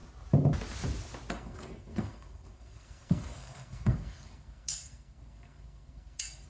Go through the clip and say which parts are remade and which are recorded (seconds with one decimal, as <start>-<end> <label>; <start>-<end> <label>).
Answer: 0.0-1.3 recorded; 1.3-6.5 remade